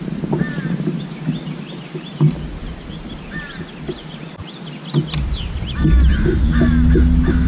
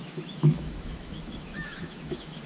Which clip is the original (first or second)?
first